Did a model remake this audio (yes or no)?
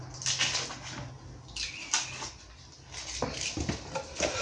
no